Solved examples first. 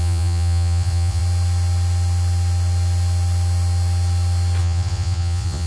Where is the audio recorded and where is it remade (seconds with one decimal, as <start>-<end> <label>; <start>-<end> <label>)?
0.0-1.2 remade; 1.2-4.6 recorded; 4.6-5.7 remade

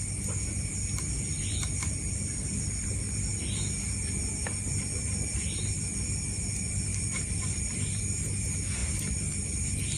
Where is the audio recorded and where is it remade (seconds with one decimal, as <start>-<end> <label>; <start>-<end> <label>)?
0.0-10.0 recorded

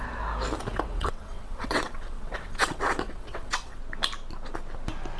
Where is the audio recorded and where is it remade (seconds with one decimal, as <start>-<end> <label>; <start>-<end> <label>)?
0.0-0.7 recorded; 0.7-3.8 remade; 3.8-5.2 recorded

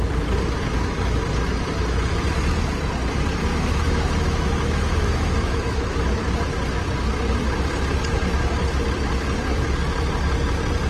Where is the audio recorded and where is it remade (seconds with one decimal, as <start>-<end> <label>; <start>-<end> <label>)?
0.0-3.5 recorded; 3.5-6.3 remade; 6.3-10.9 recorded